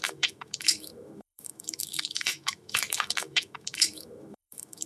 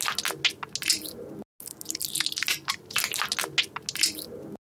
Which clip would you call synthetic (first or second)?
first